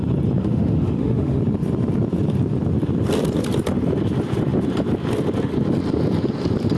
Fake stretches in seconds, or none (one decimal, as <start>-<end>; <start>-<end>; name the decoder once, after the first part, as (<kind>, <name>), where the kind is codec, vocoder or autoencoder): 0.4-1.4 (autoencoder, DAC-VAE)